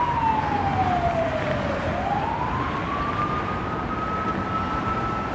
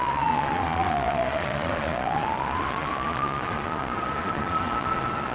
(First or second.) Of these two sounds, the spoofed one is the second